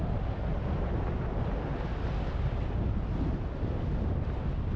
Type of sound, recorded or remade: recorded